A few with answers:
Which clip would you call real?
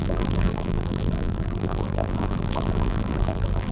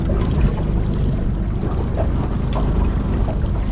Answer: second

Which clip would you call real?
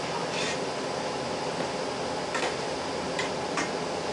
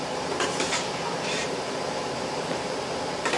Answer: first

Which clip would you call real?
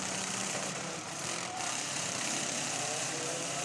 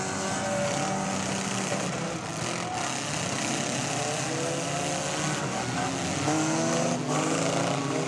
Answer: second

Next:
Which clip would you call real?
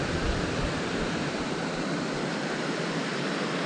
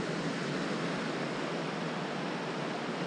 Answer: second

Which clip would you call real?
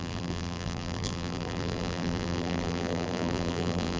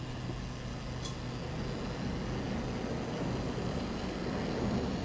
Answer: second